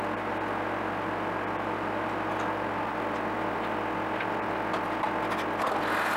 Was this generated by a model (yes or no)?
no